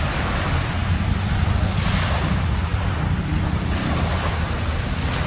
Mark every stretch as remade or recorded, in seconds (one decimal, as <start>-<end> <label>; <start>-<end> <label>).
0.0-5.3 recorded